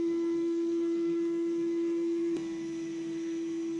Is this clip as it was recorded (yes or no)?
no